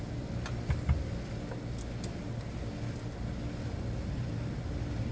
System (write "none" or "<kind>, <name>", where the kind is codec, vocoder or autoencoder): none